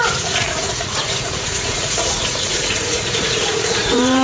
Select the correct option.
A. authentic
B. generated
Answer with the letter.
B